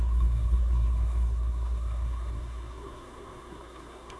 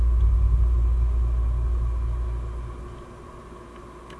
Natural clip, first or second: second